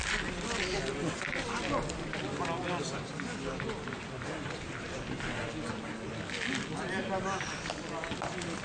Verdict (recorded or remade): recorded